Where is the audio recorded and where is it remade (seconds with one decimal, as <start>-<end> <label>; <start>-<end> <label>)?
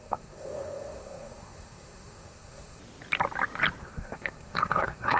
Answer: 0.0-2.8 remade; 2.8-3.8 recorded; 3.8-5.2 remade